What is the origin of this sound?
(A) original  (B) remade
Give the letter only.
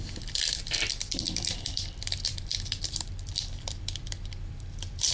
B